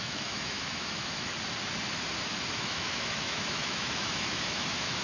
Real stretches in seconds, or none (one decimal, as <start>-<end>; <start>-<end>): 1.3-2.5